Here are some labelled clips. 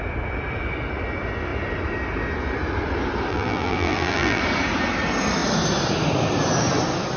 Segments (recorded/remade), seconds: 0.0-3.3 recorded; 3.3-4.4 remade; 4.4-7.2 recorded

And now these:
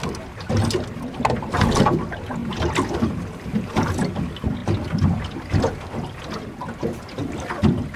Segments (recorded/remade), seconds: 0.0-2.4 recorded; 2.4-3.7 remade; 3.7-8.0 recorded

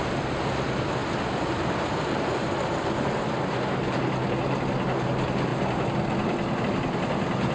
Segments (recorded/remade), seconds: 0.0-1.0 recorded; 1.0-3.2 remade; 3.2-7.5 recorded

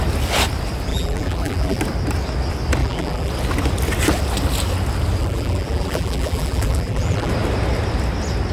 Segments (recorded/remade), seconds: 0.0-0.9 recorded; 0.9-1.8 remade; 1.8-2.8 recorded; 2.8-3.3 remade; 3.3-5.2 recorded; 5.2-7.3 remade; 7.3-8.5 recorded

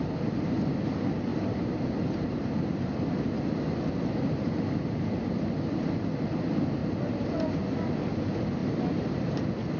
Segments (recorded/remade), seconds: 0.0-1.3 recorded; 1.3-3.6 remade; 3.6-8.6 recorded; 8.6-9.8 remade

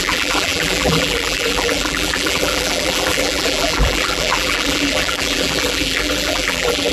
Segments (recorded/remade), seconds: 0.0-6.9 remade